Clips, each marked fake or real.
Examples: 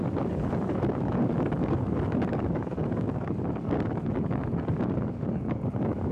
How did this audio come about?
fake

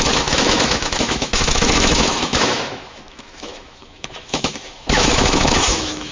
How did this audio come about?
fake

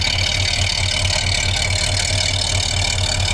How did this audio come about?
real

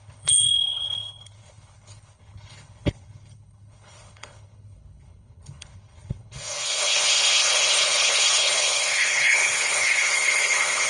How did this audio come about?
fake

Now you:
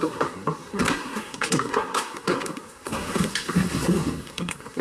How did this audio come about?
fake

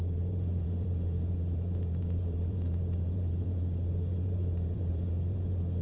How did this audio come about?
fake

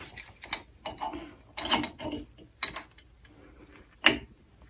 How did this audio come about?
real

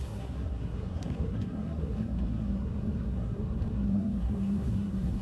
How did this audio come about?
fake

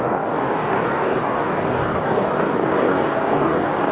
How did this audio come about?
fake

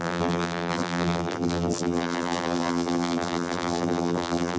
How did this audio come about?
fake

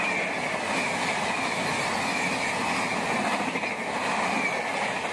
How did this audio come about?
real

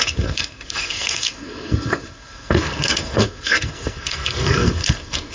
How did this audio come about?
fake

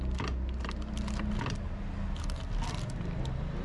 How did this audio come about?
real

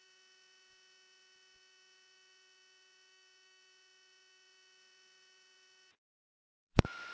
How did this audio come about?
fake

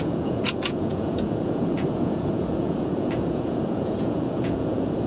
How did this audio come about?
fake